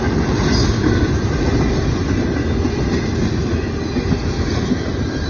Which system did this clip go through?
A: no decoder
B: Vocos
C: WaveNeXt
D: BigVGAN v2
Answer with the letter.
A